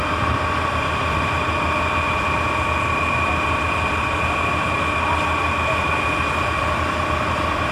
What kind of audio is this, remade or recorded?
recorded